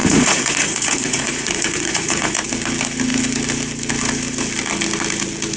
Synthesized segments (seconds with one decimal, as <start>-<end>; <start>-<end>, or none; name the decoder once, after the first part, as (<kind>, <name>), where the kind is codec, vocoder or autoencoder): 0.0-2.5 (vocoder, Vocos)